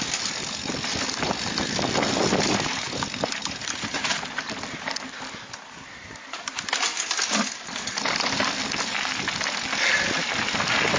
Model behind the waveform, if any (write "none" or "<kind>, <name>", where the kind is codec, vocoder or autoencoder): none